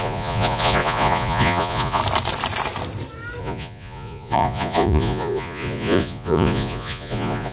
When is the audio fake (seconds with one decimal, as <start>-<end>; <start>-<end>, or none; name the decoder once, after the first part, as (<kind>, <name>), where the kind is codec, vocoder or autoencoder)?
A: 0.0-2.0 (vocoder, Vocos); 3.4-7.5